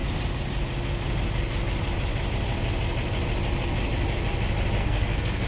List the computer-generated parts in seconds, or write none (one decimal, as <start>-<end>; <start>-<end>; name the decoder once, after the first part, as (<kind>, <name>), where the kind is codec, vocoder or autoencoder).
4.8-5.5 (codec, SNAC)